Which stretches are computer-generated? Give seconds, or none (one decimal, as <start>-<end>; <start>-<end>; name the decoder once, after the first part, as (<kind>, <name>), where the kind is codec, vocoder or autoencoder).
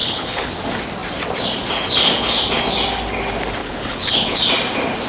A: 0.0-0.5 (codec, HILCodec); 3.6-4.4